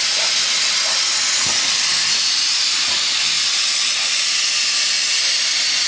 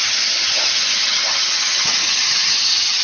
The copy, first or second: second